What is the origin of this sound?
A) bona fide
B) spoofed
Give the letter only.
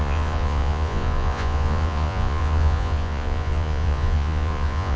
B